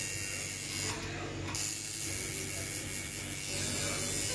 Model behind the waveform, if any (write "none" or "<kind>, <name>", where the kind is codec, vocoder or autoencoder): none